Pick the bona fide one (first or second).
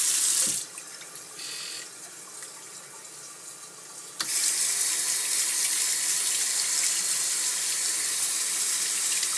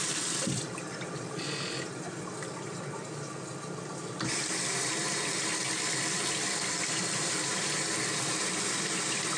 first